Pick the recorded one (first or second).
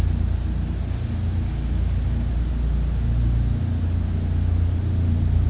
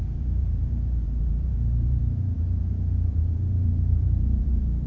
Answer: first